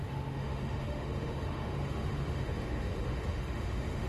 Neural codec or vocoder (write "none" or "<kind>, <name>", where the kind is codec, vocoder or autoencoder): autoencoder, DAC-VAE